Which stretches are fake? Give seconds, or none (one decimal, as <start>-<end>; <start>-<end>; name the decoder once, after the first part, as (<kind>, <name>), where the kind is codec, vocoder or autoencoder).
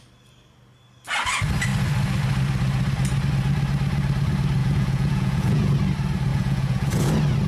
4.6-5.7 (vocoder, Vocos); 6.3-7.1